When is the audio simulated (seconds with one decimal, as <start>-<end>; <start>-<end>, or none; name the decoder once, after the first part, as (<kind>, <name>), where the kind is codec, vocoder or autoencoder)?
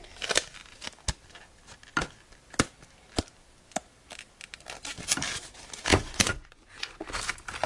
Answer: 5.9-7.1 (vocoder, Vocos)